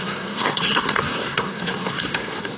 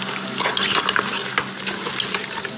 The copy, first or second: first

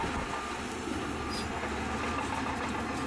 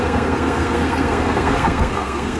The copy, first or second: second